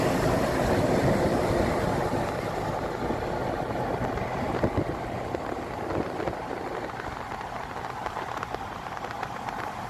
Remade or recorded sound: recorded